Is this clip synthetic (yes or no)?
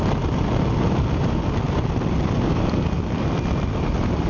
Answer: no